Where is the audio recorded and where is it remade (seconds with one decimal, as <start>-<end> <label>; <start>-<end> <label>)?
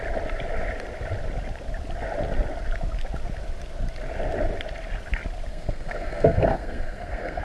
0.0-5.5 recorded; 5.5-7.4 remade